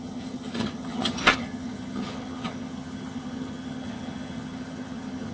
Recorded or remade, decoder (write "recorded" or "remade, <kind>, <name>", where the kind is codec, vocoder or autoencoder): remade, vocoder, HiFi-GAN